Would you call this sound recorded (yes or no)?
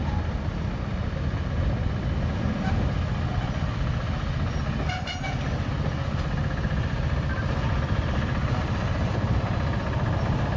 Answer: yes